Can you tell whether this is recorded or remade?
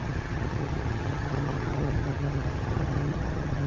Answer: remade